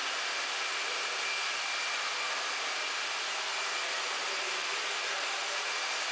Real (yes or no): yes